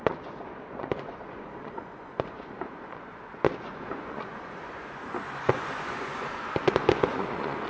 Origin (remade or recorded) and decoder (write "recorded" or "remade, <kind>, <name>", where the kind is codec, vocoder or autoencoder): remade, vocoder, Vocos